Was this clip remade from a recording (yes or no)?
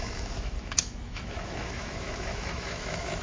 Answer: yes